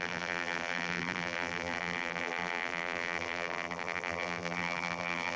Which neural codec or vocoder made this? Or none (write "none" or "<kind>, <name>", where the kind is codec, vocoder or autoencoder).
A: vocoder, BigVGAN v2